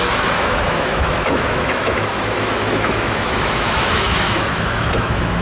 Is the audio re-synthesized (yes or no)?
yes